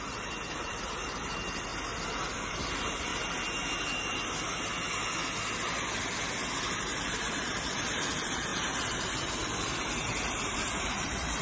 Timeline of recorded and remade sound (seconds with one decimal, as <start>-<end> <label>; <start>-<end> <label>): 0.0-1.7 remade; 1.7-2.3 recorded; 2.3-3.1 remade; 3.1-6.6 recorded; 6.6-11.4 remade